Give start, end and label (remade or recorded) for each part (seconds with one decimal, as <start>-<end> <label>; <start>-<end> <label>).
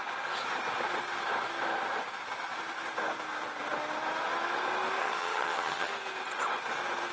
0.0-5.0 recorded; 5.0-5.9 remade; 5.9-7.1 recorded